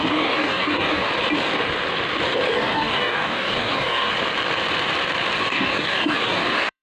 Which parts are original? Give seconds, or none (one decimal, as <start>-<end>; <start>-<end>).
1.1-2.5; 4.1-5.4